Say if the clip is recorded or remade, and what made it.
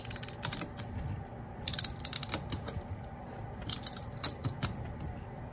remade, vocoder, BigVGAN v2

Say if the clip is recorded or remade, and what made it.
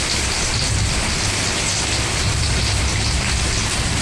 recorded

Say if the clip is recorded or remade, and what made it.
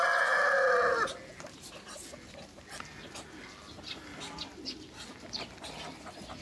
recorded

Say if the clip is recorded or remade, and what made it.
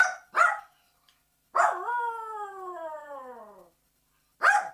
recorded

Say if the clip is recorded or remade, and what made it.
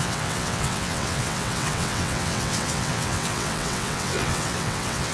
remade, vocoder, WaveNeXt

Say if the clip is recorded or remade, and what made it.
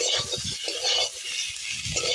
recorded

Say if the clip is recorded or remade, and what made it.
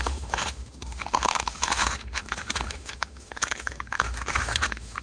remade, autoencoder, DAC-VAE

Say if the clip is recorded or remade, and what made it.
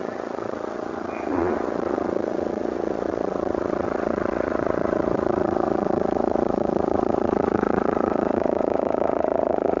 remade, vocoder, Vocos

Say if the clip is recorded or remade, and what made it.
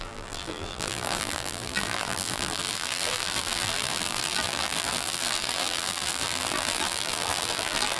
remade, vocoder, BigVGAN v2